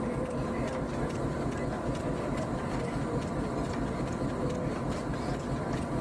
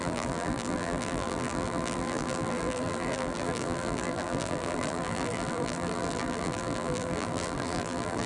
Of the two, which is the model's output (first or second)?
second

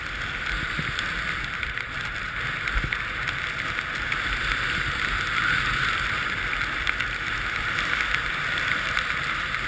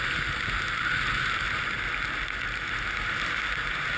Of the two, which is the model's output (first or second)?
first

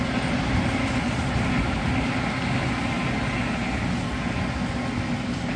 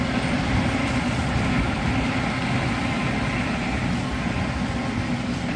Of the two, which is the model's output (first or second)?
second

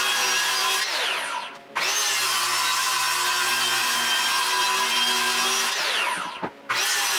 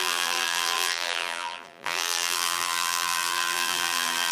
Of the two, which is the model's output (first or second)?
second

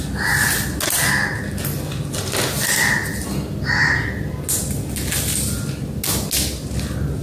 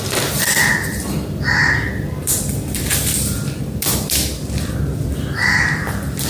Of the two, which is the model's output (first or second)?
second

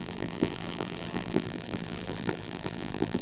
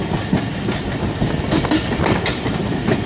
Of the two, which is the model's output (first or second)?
first